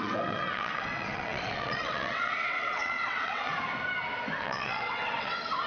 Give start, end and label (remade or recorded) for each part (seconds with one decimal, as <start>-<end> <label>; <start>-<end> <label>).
0.0-3.5 remade; 3.5-4.4 recorded; 4.4-5.7 remade